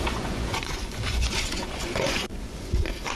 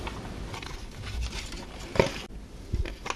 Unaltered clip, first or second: second